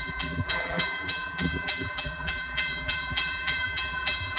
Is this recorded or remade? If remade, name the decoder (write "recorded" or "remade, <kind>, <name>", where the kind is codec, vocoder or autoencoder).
remade, vocoder, BigVGAN v2